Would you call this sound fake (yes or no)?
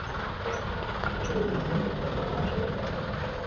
no